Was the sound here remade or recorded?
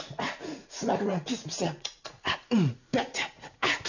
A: remade